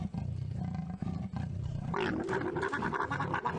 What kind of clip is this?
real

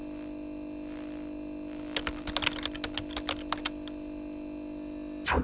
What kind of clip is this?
real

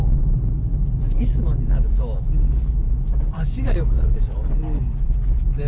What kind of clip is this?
real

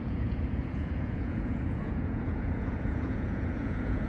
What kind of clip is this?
fake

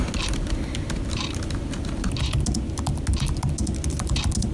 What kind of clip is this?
real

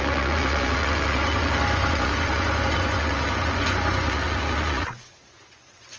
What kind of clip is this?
fake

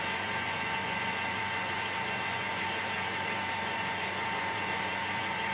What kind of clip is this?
fake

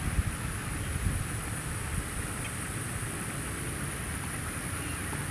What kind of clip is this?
real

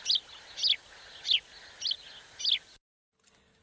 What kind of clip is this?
real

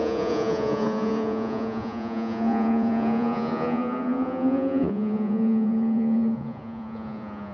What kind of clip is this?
fake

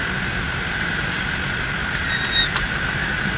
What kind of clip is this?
real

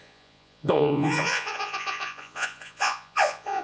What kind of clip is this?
fake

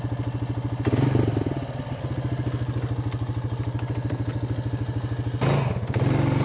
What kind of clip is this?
real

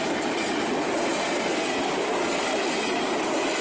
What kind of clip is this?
real